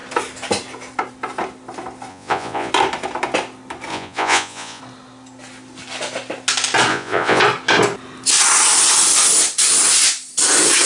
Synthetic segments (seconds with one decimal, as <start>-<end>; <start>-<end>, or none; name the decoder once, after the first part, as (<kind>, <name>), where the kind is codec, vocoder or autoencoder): 2.1-2.7 (vocoder, Vocos); 3.9-4.8; 6.9-7.4

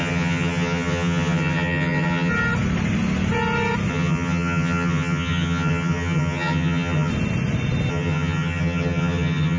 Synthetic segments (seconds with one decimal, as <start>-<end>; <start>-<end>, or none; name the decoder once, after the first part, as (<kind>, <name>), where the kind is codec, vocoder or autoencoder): 0.0-2.3 (vocoder, HiFi-GAN); 3.9-7.1; 7.9-9.6

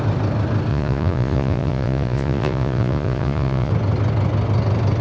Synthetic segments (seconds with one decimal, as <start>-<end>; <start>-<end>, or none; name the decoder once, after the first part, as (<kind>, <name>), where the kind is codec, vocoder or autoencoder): 0.7-3.7 (vocoder, Vocos)

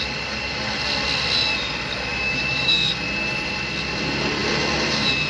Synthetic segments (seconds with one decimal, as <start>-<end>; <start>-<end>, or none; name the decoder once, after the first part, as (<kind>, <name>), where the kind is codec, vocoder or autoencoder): 2.1-2.9 (autoencoder, DAC-VAE)